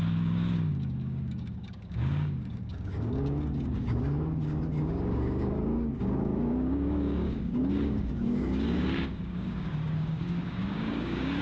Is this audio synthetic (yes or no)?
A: yes